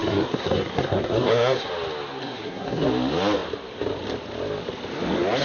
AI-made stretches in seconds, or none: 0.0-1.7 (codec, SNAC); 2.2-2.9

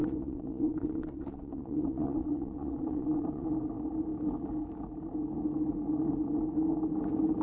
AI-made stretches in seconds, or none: 0.0-3.5 (vocoder, WaveNeXt)

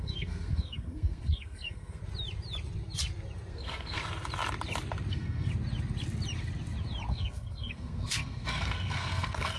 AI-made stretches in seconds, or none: 0.0-2.0 (codec, SNAC); 3.5-4.0; 5.1-5.5; 7.1-9.6

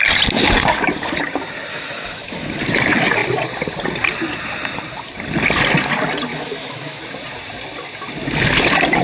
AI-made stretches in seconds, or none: 1.7-2.6 (autoencoder, DAC-VAE); 6.3-7.0

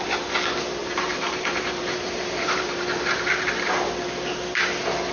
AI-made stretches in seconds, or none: 0.8-3.5 (vocoder, BigVGAN v2)

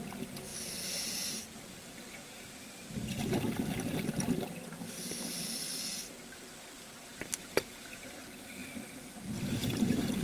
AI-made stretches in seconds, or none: none

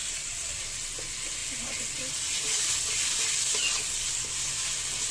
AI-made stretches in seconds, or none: 0.0-0.6 (vocoder, BigVGAN v2)

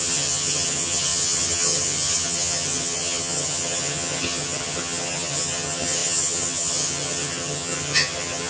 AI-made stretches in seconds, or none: 0.0-8.5 (vocoder, HiFi-GAN)